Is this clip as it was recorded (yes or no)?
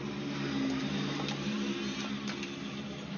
yes